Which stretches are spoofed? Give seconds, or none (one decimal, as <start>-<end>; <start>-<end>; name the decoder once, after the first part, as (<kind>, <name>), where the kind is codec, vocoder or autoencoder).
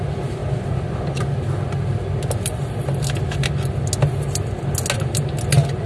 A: none